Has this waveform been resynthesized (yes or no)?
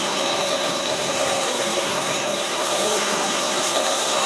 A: yes